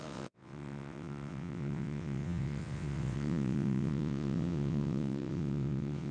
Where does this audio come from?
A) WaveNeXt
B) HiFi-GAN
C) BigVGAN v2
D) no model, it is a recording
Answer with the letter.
A